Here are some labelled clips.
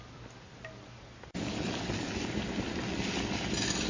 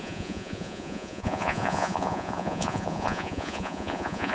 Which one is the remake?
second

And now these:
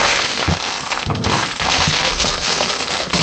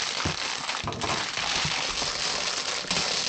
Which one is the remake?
first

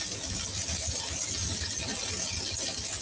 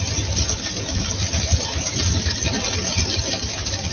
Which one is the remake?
second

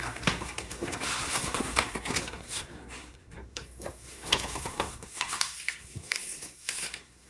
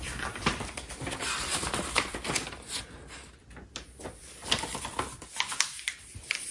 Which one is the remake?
first